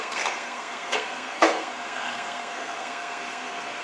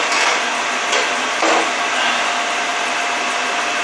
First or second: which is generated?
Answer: first